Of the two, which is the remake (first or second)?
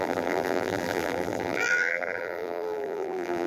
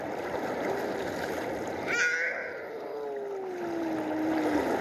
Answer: first